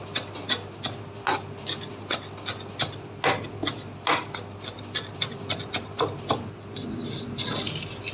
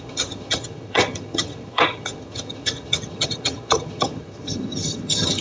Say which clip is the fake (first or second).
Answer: second